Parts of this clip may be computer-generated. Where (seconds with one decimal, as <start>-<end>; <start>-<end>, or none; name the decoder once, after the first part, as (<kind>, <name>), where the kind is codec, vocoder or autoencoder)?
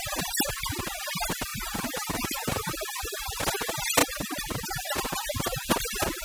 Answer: 1.5-2.7 (vocoder, BigVGAN v2)